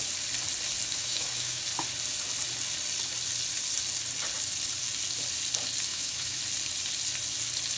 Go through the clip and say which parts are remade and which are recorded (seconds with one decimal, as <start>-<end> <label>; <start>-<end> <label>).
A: 0.0-0.9 recorded; 0.9-1.6 remade; 1.6-5.9 recorded; 5.9-6.4 remade; 6.4-7.8 recorded